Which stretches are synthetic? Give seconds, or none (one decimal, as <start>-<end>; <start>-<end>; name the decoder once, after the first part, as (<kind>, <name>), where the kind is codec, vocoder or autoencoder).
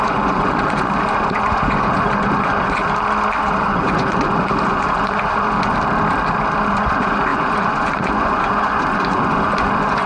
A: 0.0-2.8 (vocoder, Vocos); 3.4-5.7; 6.7-10.1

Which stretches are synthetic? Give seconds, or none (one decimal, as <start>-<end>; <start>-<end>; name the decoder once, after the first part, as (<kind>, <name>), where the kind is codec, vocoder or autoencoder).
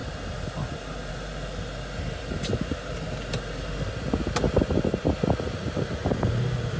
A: none